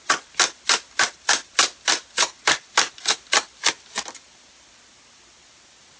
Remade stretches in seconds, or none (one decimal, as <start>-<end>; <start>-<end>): none